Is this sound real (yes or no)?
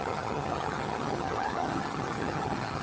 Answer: no